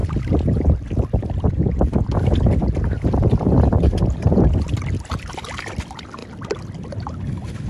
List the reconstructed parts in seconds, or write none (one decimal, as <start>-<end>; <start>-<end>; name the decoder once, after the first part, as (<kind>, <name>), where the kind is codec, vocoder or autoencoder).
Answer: 3.4-7.7 (vocoder, BigVGAN v2)